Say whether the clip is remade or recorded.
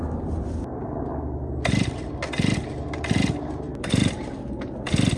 recorded